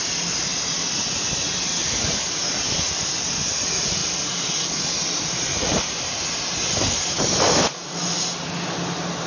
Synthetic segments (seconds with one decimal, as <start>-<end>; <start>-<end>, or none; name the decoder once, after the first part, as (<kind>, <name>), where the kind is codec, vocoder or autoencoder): 0.5-2.4 (vocoder, BigVGAN v2); 4.0-4.6; 5.5-6.1